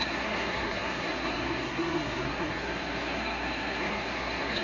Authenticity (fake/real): fake